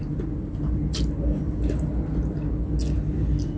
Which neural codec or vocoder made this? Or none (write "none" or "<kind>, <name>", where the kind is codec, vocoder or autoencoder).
none